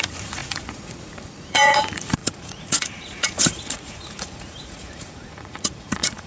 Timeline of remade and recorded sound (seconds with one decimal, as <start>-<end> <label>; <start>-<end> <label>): 0.0-6.3 remade